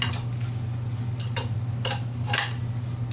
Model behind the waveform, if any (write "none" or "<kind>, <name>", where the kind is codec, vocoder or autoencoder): none